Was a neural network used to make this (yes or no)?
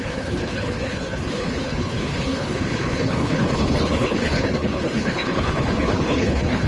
yes